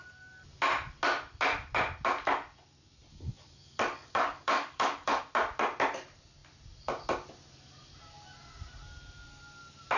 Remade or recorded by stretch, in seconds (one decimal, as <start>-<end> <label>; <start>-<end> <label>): 0.0-3.1 recorded; 3.1-5.2 remade; 5.2-10.0 recorded